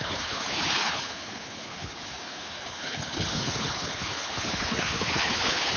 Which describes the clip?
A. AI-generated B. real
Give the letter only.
A